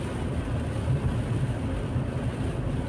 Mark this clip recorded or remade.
recorded